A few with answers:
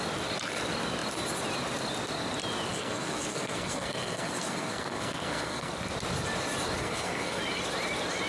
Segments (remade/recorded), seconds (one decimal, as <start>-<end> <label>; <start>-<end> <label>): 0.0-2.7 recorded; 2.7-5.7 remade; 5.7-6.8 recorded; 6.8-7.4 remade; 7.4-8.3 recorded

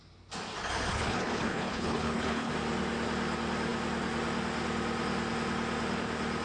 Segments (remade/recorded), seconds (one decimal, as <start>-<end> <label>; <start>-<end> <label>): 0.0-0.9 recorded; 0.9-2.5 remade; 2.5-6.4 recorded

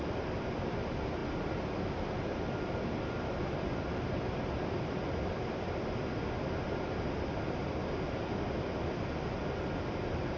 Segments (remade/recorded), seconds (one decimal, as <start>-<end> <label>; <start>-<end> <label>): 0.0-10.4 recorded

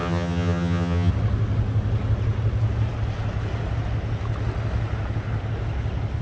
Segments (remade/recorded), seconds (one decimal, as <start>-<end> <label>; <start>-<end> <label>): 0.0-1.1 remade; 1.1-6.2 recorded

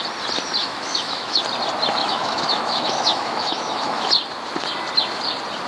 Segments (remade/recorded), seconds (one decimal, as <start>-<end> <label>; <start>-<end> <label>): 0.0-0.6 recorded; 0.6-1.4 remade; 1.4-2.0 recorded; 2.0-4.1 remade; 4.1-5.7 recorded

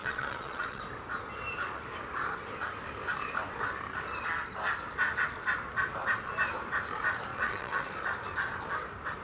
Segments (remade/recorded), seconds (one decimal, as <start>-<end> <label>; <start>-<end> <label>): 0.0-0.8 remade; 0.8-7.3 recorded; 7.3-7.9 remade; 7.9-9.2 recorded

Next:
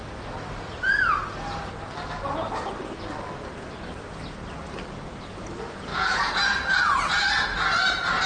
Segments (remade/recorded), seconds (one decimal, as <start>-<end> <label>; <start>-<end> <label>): 0.0-5.9 recorded; 5.9-6.4 remade; 6.4-8.3 recorded